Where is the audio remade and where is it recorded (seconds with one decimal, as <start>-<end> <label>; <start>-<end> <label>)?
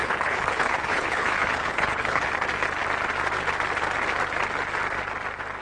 0.0-2.3 remade; 2.3-5.6 recorded